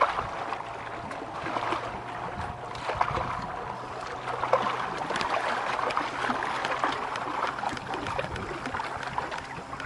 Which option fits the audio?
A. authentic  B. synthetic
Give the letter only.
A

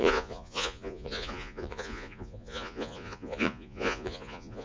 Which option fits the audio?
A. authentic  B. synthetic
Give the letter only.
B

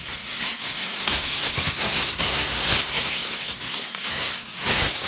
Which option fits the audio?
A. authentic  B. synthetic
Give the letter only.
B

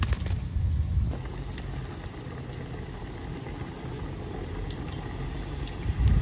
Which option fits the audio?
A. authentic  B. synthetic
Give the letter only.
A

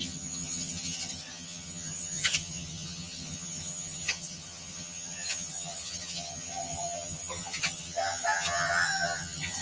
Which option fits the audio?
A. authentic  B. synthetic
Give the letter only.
B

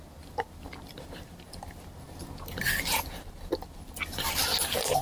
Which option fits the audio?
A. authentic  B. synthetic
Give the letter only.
A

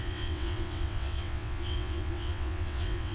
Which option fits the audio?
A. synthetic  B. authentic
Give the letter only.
A